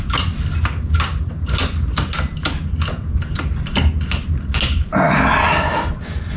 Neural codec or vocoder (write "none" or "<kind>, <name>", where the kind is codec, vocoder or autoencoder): none